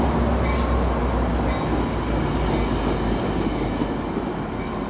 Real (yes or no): yes